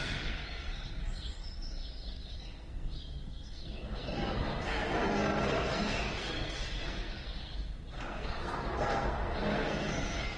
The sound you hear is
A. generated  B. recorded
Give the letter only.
A